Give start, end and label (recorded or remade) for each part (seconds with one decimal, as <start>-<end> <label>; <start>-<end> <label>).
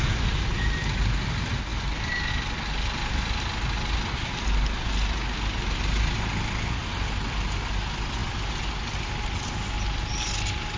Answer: 0.0-10.8 recorded